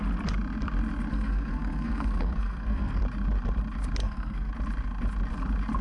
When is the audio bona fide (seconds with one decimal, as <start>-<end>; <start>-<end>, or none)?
0.0-1.1; 3.0-4.0; 4.5-5.8